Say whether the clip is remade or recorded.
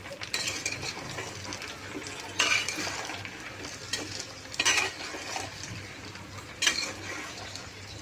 recorded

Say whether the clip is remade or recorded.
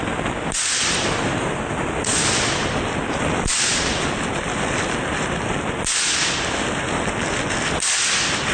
recorded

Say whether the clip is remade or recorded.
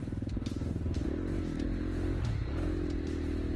recorded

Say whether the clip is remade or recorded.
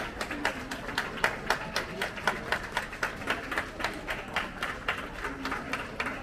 recorded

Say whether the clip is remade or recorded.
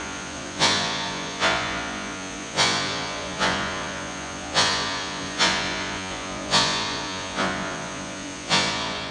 remade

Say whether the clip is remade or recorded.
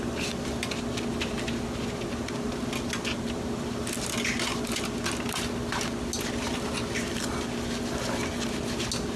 recorded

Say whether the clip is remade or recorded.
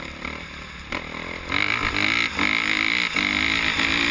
recorded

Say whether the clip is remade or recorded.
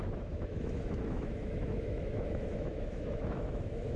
remade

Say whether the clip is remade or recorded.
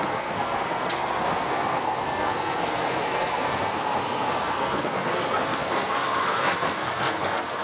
remade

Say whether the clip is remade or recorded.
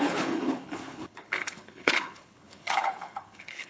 remade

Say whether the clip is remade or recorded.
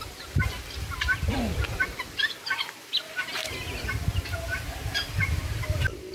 remade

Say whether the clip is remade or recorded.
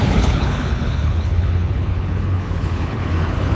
remade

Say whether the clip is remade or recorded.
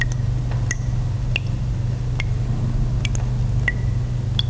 recorded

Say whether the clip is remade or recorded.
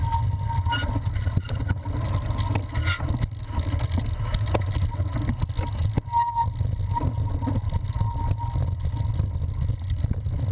recorded